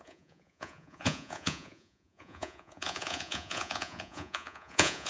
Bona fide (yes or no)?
no